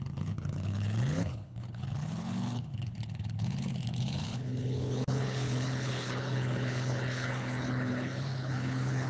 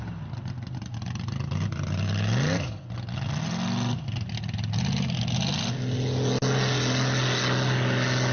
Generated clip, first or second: first